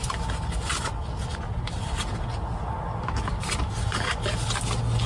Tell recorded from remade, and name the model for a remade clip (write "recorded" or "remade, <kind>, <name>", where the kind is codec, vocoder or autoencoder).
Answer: recorded